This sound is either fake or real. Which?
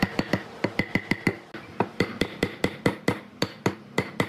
real